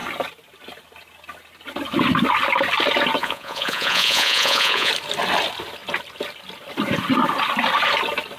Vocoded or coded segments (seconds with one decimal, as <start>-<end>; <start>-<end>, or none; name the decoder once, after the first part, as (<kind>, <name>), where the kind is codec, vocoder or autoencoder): 3.2-4.9 (vocoder, Vocos)